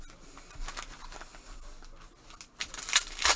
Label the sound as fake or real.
real